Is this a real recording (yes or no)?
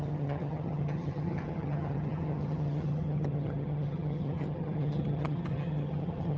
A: no